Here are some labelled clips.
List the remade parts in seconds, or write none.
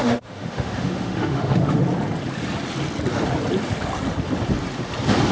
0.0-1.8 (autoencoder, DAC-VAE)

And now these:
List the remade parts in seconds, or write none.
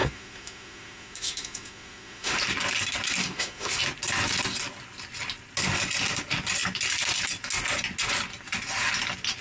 0.0-2.4 (autoencoder, DAC-VAE); 3.2-3.8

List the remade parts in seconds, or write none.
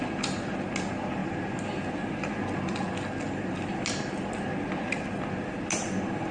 none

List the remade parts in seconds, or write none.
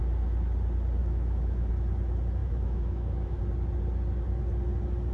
1.0-1.7 (autoencoder, DAC-VAE); 2.4-3.4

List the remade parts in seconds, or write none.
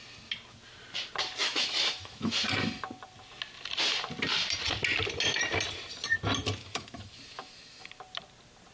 1.4-2.3 (autoencoder, DAC-VAE); 6.6-7.9